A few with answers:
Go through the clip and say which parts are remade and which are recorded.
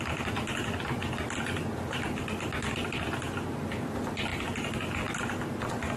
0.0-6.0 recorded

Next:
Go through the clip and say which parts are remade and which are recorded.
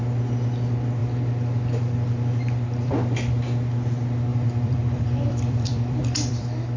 0.0-1.0 recorded; 1.0-2.9 remade; 2.9-4.3 recorded; 4.3-6.8 remade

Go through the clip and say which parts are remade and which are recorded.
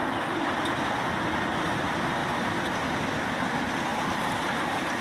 0.0-2.2 recorded; 2.2-3.1 remade; 3.1-5.0 recorded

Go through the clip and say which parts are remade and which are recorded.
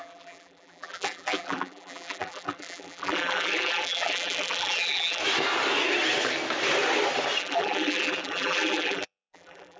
0.0-5.2 remade; 5.2-7.4 recorded; 7.4-9.8 remade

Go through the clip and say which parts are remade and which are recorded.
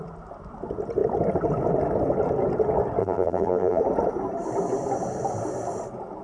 0.0-3.0 recorded; 3.0-3.8 remade; 3.8-6.2 recorded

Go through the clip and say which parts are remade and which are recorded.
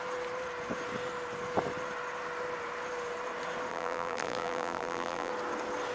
0.0-3.7 recorded; 3.7-5.3 remade; 5.3-5.9 recorded